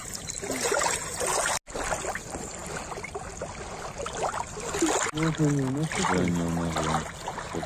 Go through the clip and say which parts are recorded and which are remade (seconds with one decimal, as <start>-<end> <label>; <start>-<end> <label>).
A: 0.0-7.7 recorded